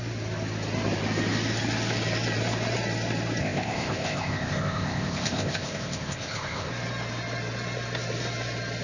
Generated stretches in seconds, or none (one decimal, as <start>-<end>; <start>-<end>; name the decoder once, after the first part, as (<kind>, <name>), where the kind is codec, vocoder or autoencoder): 3.4-6.7 (codec, ZipCodec)